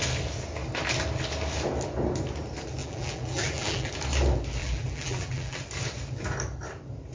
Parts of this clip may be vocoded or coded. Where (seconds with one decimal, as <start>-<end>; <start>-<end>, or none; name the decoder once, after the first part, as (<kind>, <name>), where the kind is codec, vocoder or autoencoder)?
2.8-3.9 (vocoder, BigVGAN v2); 4.6-5.6